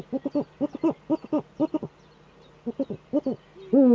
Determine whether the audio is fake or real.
real